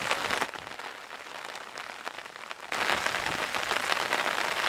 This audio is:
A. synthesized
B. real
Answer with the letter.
B